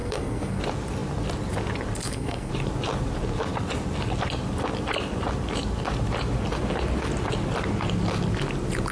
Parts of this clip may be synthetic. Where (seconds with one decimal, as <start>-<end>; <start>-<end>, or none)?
0.0-0.6; 2.0-2.5